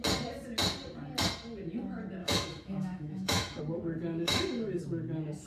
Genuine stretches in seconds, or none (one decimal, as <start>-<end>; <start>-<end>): 0.0-2.2; 3.6-4.1; 4.8-5.5